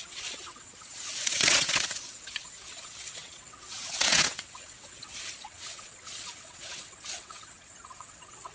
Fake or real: fake